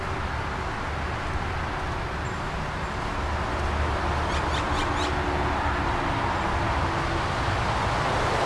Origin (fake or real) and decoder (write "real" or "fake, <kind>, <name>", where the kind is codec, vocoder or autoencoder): real